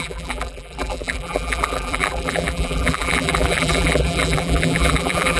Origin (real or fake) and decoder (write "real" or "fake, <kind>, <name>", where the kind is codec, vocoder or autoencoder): fake, vocoder, BigVGAN v2